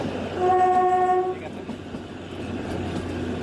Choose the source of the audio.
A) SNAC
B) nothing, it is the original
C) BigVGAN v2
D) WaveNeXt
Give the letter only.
B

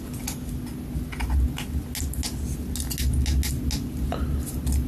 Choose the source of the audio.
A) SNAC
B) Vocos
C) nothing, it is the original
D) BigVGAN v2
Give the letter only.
C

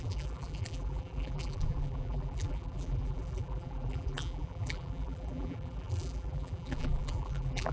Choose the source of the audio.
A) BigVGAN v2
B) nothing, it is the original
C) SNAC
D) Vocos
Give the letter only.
A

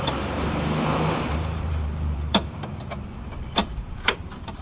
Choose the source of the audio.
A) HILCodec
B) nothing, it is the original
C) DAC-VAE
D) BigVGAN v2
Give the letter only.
D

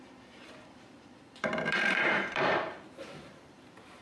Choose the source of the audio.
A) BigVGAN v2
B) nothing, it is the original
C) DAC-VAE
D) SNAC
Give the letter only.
A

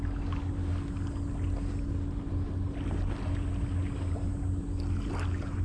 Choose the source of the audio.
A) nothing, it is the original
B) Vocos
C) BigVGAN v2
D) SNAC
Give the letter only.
A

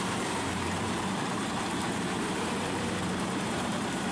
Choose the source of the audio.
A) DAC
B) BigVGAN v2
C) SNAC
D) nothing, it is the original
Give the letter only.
B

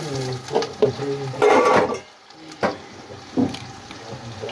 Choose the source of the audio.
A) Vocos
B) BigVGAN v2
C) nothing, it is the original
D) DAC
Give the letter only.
C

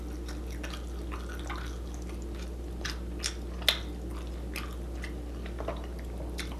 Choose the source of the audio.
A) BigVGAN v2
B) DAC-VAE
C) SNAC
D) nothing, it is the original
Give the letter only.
D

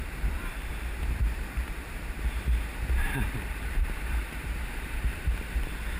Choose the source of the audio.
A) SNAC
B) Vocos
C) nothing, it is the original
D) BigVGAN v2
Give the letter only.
D